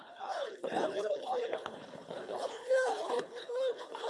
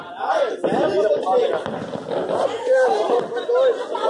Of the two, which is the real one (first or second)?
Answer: second